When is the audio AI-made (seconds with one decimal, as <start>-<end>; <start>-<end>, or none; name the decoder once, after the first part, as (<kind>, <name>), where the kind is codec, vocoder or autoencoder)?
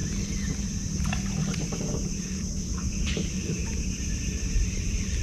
1.4-3.6 (vocoder, BigVGAN v2); 4.2-5.2